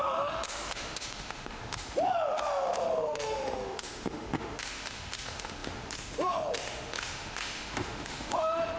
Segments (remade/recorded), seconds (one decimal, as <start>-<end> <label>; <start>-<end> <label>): 0.0-8.8 remade